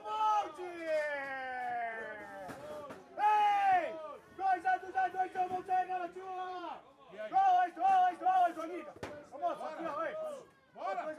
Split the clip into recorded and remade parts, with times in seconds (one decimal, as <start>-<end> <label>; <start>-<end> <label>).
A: 0.0-5.3 recorded; 5.3-8.9 remade; 8.9-11.2 recorded